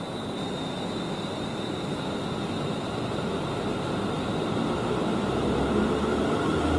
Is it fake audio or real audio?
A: real